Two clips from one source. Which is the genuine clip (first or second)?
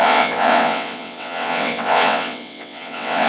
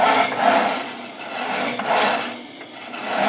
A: second